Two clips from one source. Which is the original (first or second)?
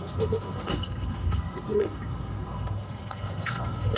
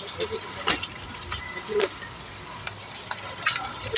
second